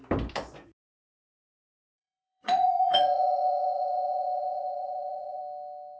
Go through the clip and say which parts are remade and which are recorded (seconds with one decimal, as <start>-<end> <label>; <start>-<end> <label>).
0.0-1.8 recorded; 1.8-5.4 remade; 5.4-6.0 recorded